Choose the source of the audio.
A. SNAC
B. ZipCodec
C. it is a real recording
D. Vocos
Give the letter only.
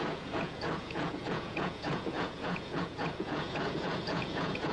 D